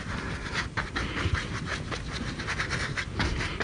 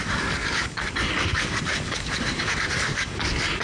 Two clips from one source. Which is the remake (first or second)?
second